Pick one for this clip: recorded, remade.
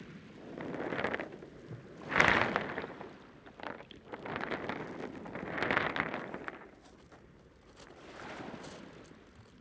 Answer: recorded